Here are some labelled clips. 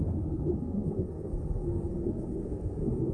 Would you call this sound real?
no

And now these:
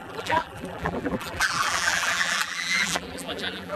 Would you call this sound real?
no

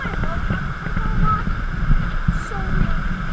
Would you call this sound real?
yes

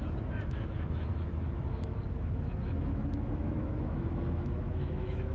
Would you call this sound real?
no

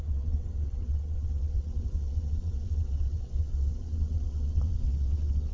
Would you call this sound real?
no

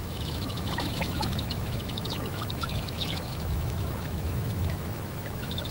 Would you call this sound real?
no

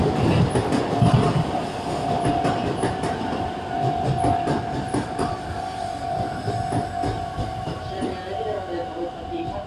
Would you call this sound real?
yes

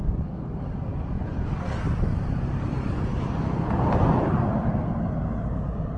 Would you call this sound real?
yes